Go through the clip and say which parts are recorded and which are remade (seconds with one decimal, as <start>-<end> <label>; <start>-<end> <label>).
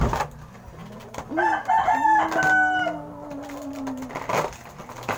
0.0-5.2 recorded